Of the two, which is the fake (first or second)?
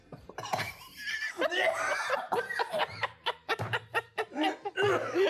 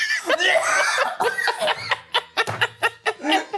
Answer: first